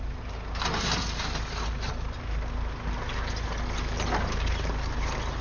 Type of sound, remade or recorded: recorded